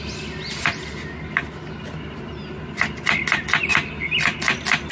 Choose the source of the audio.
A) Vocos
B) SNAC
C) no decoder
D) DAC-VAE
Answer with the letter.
C